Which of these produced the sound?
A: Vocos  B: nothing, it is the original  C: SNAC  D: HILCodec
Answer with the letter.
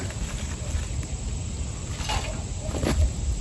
B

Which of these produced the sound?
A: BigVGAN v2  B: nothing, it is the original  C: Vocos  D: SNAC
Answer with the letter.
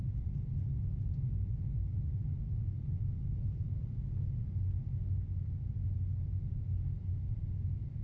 B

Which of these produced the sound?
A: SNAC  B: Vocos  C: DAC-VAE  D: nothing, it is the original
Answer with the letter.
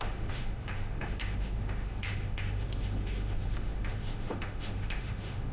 C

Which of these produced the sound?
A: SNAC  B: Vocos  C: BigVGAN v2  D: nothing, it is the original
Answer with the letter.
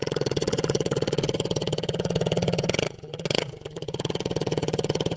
B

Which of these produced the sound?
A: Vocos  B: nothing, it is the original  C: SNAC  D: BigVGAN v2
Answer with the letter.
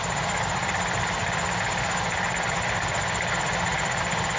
B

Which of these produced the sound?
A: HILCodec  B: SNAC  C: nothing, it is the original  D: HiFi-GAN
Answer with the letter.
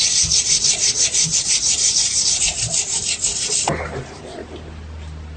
C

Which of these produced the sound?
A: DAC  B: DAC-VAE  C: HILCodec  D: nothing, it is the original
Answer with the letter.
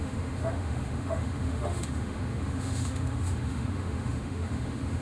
B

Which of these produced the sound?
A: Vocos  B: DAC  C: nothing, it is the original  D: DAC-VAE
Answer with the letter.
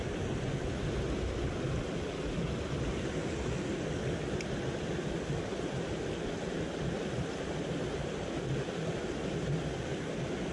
C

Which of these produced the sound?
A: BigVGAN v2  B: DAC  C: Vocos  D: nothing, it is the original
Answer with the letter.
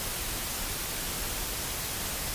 D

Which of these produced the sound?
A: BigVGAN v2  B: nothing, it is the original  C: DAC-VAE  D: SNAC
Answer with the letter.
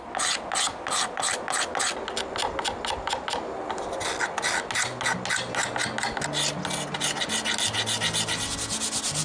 B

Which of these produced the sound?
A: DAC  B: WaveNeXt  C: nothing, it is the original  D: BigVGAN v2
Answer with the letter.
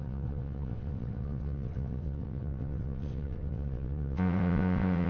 B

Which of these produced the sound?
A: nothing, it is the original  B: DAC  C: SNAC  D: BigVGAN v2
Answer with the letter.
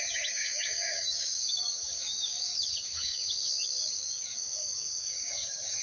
B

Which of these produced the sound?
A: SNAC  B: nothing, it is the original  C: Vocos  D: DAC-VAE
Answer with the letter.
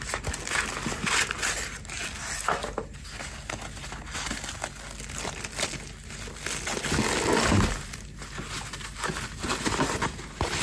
B